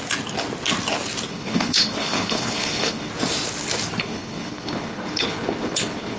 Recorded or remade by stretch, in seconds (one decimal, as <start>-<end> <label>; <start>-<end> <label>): 0.0-1.3 recorded; 1.3-3.1 remade; 3.1-4.0 recorded; 4.0-6.2 remade

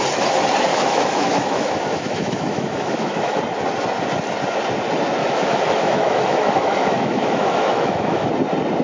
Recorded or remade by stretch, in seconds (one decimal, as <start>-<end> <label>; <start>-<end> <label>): 0.0-0.7 recorded; 0.7-3.4 remade; 3.4-5.2 recorded; 5.2-8.3 remade; 8.3-8.8 recorded